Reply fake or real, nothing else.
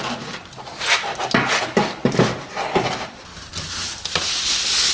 real